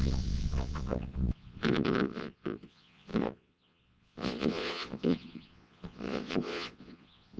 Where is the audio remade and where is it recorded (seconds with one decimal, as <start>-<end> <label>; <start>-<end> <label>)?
0.0-7.4 remade